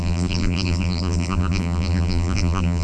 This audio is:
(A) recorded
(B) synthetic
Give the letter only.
B